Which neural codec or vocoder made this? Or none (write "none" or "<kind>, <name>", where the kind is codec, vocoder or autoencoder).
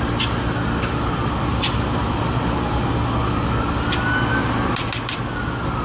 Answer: none